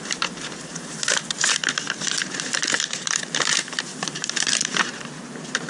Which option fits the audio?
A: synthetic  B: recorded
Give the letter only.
A